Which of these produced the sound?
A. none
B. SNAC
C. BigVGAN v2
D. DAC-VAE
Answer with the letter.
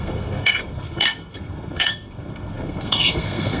B